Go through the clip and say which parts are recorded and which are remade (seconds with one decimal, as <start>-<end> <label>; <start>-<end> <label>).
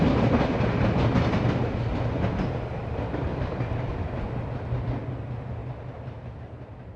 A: 0.0-2.8 recorded; 2.8-3.9 remade; 3.9-7.0 recorded